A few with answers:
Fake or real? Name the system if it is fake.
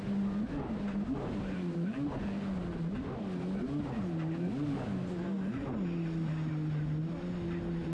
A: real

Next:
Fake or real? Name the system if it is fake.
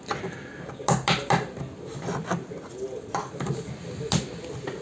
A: real